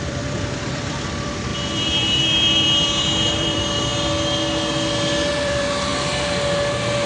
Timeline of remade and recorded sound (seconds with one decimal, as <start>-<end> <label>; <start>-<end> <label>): 0.0-3.9 remade; 3.9-5.3 recorded; 5.3-5.9 remade; 5.9-7.1 recorded

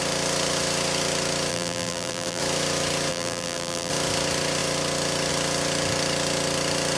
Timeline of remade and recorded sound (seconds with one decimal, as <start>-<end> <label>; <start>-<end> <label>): 0.0-1.5 recorded; 1.5-2.4 remade; 2.4-3.1 recorded; 3.1-3.9 remade; 3.9-7.0 recorded

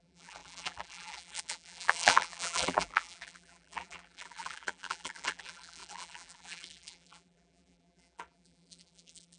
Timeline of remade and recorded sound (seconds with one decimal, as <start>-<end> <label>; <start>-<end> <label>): 0.0-9.4 remade

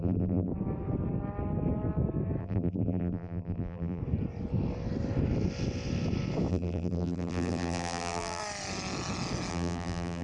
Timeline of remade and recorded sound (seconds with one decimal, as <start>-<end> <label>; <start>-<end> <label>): 0.0-0.5 remade; 0.5-2.4 recorded; 2.4-4.0 remade; 4.0-6.5 recorded; 6.5-8.4 remade; 8.4-9.5 recorded; 9.5-10.2 remade

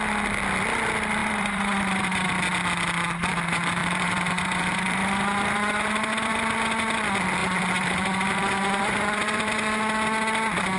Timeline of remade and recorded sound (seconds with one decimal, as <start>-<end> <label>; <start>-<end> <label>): 0.0-1.2 recorded; 1.2-2.3 remade; 2.3-3.8 recorded; 3.8-6.5 remade; 6.5-7.4 recorded; 7.4-9.8 remade; 9.8-10.8 recorded

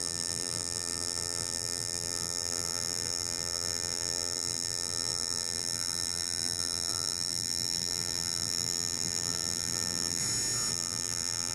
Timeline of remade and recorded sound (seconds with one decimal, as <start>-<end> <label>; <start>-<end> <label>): 0.0-10.2 remade; 10.2-10.7 recorded; 10.7-11.5 remade

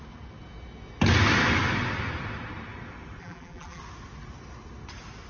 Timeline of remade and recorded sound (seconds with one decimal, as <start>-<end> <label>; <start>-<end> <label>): 0.0-3.2 recorded; 3.2-3.8 remade; 3.8-5.3 recorded